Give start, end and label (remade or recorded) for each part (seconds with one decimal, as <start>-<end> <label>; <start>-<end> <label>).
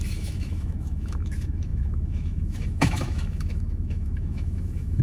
0.0-5.0 remade